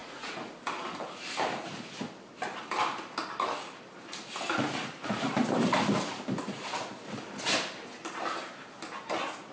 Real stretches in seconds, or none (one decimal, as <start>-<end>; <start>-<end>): 0.6-9.5